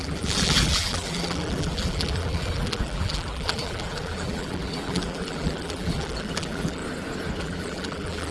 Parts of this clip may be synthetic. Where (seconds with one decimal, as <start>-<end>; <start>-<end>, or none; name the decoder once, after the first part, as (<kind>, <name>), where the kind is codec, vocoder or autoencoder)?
0.0-6.8 (vocoder, BigVGAN v2); 7.4-8.3

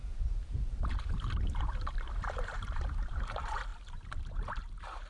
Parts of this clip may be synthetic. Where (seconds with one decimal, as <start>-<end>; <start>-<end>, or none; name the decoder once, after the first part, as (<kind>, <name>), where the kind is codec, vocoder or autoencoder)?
0.0-3.7 (vocoder, BigVGAN v2); 4.2-5.1

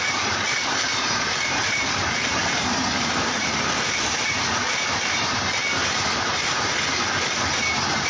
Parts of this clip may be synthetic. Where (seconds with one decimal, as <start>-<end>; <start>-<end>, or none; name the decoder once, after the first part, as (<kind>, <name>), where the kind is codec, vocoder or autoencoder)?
0.0-8.1 (vocoder, BigVGAN v2)

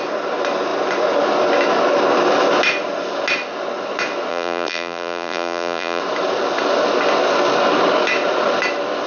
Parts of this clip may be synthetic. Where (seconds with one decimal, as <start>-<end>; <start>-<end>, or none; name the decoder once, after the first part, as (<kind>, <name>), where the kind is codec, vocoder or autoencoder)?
4.3-6.0 (vocoder, BigVGAN v2)

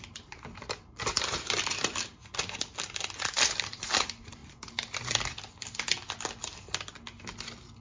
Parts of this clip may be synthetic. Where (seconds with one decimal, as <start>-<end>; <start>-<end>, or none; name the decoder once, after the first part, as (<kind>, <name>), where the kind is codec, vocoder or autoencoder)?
0.0-2.2 (vocoder, BigVGAN v2); 3.2-4.4

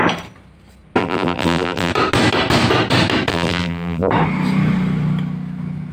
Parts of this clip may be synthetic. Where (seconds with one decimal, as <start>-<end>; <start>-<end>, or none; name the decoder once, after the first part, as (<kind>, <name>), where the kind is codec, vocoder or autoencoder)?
1.0-1.9 (vocoder, BigVGAN v2); 3.3-4.1